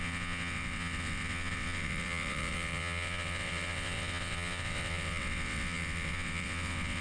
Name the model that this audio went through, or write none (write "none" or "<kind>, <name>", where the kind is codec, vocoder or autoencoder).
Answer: vocoder, WaveNeXt